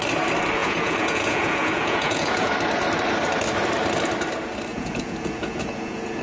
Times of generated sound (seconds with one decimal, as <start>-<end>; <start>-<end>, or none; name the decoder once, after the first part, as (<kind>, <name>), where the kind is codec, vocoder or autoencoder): 0.6-2.5 (vocoder, Vocos); 4.7-6.2